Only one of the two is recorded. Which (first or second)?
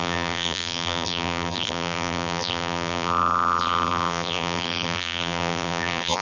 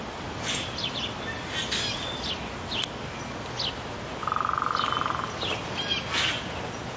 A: second